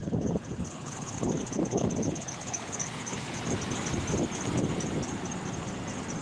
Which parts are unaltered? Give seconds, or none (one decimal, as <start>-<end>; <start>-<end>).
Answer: 3.4-6.2

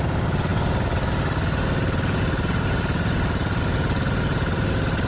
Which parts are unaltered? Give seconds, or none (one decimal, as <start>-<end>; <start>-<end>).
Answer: 0.0-5.1

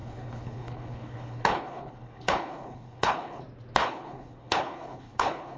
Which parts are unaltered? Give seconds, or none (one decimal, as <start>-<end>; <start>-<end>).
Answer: 3.4-3.8

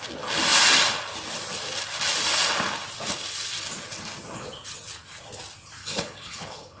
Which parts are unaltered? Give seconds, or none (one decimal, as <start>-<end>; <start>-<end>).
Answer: 0.0-5.8

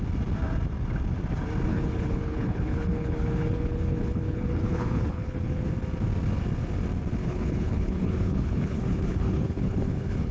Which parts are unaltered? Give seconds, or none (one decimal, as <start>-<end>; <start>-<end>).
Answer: 0.0-1.7; 5.7-7.2

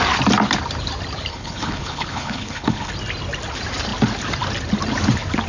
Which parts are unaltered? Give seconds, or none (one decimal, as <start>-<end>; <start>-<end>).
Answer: 0.0-1.3; 2.9-5.5

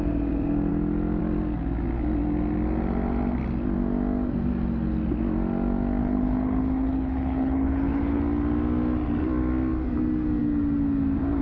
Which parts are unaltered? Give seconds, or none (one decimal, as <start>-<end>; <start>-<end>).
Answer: 0.0-6.0; 8.2-11.4

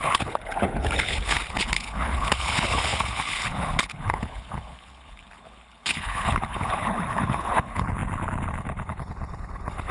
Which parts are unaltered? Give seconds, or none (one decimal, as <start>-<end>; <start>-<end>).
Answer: none